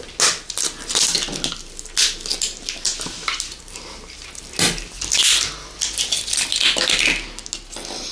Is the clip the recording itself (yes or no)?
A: yes